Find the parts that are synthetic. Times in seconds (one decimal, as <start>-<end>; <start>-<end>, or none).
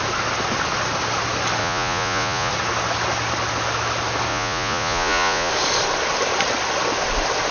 1.6-2.5; 4.3-5.5